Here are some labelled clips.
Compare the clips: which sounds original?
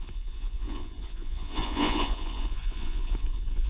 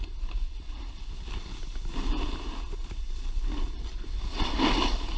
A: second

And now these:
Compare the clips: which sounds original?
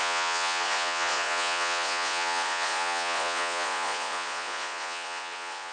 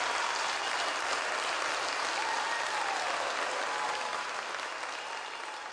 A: second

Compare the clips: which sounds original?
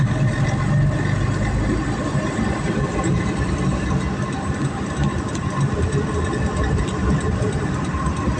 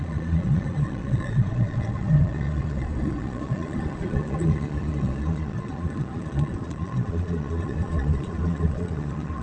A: first